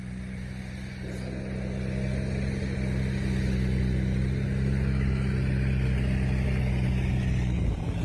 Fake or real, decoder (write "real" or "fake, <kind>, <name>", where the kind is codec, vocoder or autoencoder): real